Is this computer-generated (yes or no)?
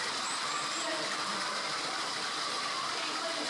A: yes